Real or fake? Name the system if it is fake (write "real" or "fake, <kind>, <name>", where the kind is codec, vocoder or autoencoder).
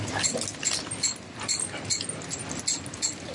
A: real